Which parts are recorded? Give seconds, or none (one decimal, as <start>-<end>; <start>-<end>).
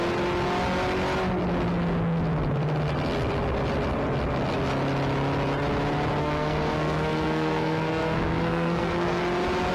0.0-6.2; 9.2-9.7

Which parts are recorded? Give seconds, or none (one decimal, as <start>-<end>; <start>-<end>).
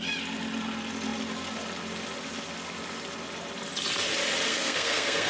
0.0-4.5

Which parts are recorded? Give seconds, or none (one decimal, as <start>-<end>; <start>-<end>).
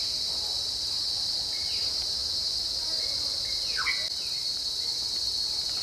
0.0-5.8